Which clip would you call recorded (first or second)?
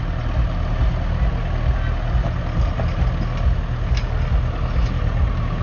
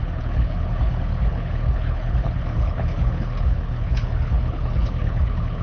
first